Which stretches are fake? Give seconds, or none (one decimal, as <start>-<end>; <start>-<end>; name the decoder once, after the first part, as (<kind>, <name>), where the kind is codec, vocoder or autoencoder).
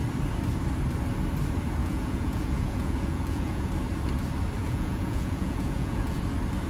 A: 1.8-3.7 (vocoder, Vocos); 4.6-6.2